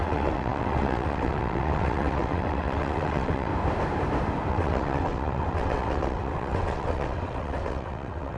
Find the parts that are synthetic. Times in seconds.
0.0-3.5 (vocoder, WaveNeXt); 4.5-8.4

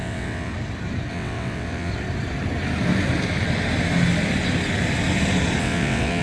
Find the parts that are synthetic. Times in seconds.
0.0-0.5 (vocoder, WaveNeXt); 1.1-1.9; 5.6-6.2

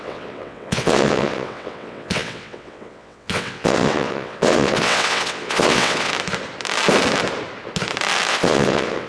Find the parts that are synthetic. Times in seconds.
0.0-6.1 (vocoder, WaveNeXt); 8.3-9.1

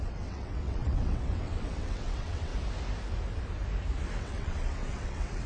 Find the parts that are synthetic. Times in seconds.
0.0-2.5 (vocoder, WaveNeXt); 4.2-5.5

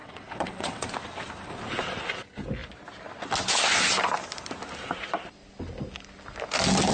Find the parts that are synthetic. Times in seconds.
0.0-0.9 (vocoder, WaveNeXt)